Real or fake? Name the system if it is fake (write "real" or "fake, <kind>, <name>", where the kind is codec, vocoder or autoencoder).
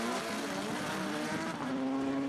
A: real